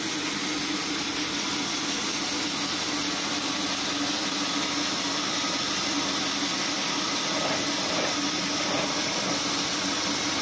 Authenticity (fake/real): real